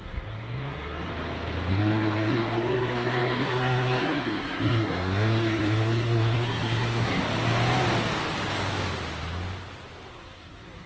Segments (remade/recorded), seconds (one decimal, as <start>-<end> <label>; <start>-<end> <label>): 0.0-1.1 remade; 1.1-1.7 recorded; 1.7-7.2 remade; 7.2-10.1 recorded; 10.1-10.9 remade